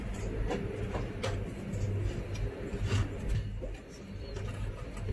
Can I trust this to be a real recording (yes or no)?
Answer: yes